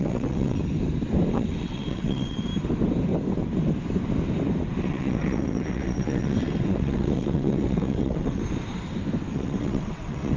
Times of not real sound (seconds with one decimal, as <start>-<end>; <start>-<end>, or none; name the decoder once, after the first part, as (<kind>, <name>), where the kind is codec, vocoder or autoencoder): 0.0-0.6 (vocoder, WaveNeXt); 1.3-2.5; 4.8-8.4; 9.3-10.4